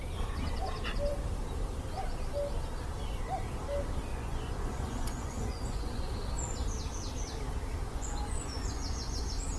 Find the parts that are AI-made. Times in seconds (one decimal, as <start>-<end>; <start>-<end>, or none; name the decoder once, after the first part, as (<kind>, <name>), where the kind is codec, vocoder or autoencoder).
4.1-6.1 (vocoder, Vocos); 7.8-9.2